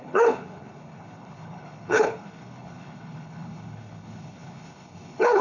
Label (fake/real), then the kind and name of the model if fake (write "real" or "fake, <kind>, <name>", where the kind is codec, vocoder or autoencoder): fake, codec, HILCodec